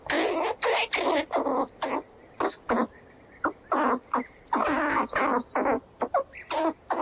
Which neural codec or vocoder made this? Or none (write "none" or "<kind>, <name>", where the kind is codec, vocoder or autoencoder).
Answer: none